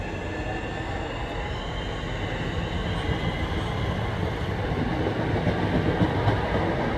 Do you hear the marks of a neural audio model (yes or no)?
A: no